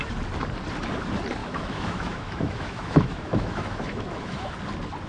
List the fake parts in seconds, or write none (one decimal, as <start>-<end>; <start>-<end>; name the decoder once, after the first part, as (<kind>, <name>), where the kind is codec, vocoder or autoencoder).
1.4-4.5 (autoencoder, DAC-VAE)